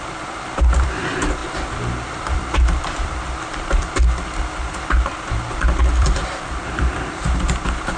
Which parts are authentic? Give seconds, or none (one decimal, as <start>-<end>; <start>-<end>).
none